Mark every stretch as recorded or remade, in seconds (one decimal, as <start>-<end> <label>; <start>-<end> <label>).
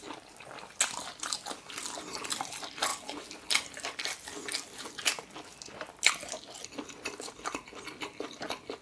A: 0.0-8.8 recorded